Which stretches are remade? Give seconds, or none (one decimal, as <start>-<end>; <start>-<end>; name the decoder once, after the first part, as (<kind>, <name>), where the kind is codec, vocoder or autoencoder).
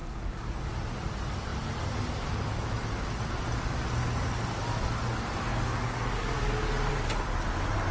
0.0-0.7 (codec, DAC); 5.5-6.9